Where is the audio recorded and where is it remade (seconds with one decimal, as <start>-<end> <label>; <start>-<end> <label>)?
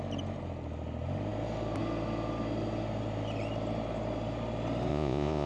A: 0.0-4.9 recorded; 4.9-5.5 remade